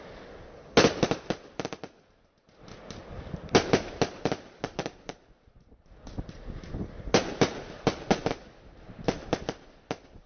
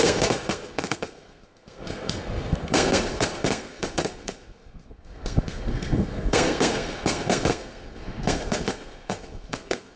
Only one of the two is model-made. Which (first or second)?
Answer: second